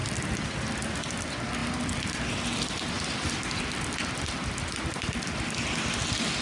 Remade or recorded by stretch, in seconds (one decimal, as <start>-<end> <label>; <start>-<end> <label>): 0.0-1.0 remade; 1.0-1.6 recorded; 1.6-5.4 remade; 5.4-6.4 recorded